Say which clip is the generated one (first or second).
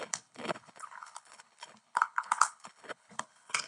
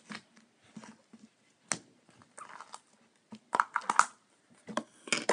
first